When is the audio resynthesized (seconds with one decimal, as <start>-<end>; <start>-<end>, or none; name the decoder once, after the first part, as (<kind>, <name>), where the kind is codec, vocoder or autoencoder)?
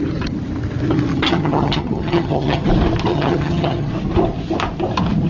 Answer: 1.1-2.7 (vocoder, HiFi-GAN); 3.1-3.9